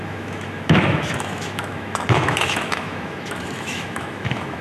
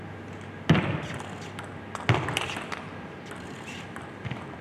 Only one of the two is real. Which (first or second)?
second